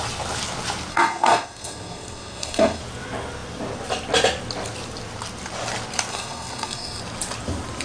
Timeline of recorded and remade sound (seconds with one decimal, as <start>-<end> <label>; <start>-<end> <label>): 0.0-0.9 recorded; 0.9-2.8 remade; 2.8-6.1 recorded; 6.1-7.0 remade; 7.0-7.8 recorded